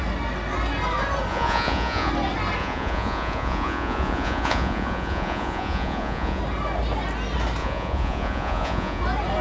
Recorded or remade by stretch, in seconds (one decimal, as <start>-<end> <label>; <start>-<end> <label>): 0.0-1.3 recorded; 1.3-2.1 remade; 2.1-2.6 recorded; 2.6-6.4 remade; 6.4-7.6 recorded; 7.6-9.0 remade; 9.0-9.4 recorded